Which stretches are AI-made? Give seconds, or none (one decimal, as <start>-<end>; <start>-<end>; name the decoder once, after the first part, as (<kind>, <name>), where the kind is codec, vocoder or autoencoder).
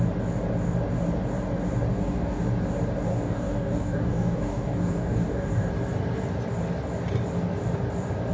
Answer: 1.9-2.4 (codec, DAC); 3.1-5.7